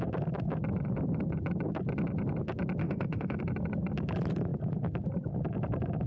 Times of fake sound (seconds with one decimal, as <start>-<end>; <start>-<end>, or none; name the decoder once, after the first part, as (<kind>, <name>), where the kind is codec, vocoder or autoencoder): 2.8-3.4 (autoencoder, DAC-VAE)